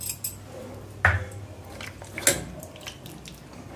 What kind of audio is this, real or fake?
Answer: real